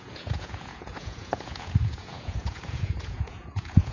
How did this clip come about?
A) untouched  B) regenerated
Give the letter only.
B